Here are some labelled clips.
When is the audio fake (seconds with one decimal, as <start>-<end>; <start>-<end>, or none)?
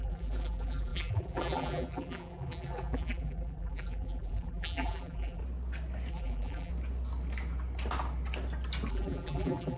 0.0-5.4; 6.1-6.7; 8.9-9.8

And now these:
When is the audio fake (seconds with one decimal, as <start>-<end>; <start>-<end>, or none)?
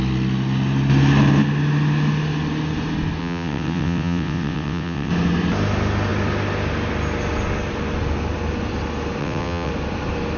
3.2-5.1; 9.2-9.7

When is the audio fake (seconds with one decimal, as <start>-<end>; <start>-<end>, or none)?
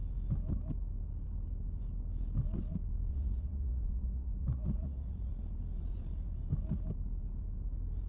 3.1-5.3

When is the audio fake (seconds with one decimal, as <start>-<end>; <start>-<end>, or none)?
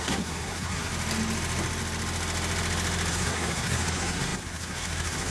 0.0-0.9; 3.1-5.3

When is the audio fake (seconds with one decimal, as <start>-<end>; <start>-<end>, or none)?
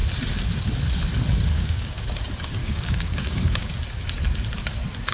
1.5-2.1; 2.6-3.7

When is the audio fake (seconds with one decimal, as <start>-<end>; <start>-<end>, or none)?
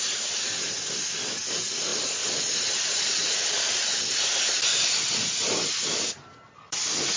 none